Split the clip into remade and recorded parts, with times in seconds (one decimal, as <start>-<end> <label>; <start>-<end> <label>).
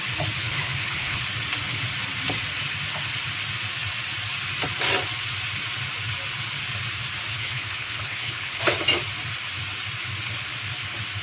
0.0-0.4 recorded; 0.4-1.2 remade; 1.2-7.3 recorded; 7.3-8.6 remade; 8.6-11.2 recorded